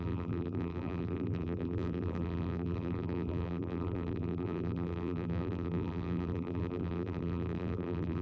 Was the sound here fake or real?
fake